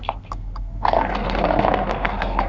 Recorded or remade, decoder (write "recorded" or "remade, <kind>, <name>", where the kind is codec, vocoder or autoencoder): remade, codec, SNAC